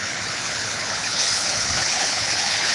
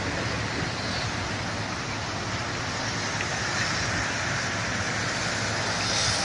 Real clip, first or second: second